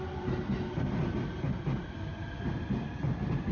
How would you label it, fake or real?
real